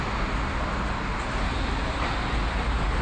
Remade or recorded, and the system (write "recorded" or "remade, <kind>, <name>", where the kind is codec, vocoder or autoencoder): recorded